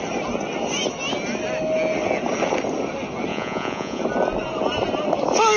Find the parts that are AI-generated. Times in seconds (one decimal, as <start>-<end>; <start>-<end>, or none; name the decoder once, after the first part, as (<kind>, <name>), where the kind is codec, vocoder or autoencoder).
3.3-4.0 (vocoder, Vocos)